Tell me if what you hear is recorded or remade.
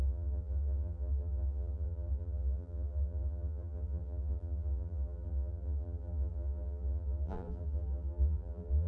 remade